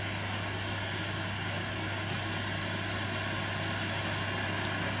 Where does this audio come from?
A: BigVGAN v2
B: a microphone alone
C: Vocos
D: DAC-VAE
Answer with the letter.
B